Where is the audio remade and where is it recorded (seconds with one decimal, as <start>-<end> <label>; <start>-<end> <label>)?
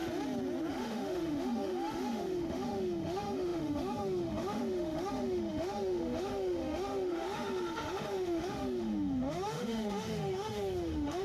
0.0-0.7 recorded; 0.7-11.2 remade